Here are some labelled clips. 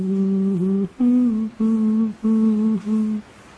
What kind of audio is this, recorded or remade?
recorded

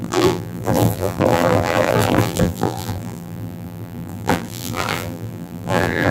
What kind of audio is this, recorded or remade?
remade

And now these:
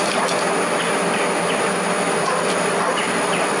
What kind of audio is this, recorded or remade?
recorded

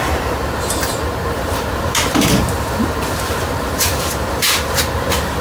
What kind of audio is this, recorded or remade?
remade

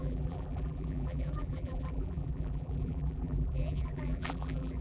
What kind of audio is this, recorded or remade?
remade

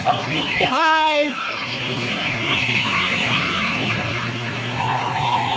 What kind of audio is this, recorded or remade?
remade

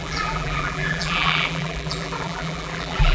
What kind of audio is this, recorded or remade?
remade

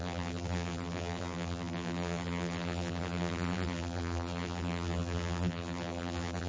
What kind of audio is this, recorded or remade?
remade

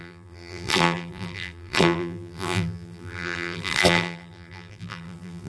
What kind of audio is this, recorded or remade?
remade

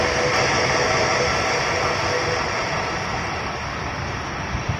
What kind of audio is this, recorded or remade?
recorded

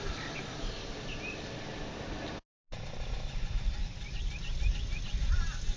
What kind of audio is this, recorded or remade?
recorded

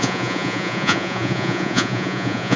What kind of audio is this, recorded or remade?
remade